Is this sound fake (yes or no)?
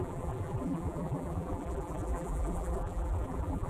yes